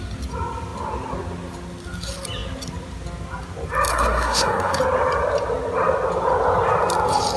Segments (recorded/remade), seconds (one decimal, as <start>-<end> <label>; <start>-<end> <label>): 0.0-3.9 recorded; 3.9-4.8 remade; 4.8-7.4 recorded